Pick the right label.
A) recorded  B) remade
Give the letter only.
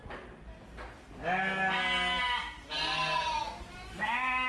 A